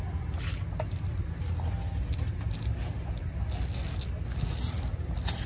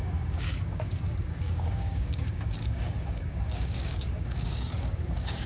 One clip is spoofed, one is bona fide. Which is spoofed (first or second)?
second